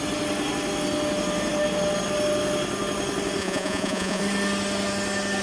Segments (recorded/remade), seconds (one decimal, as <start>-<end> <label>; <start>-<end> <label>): 0.0-3.4 recorded; 3.4-4.2 remade; 4.2-5.4 recorded